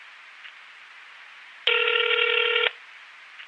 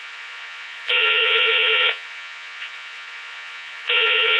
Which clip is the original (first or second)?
first